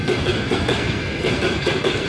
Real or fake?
fake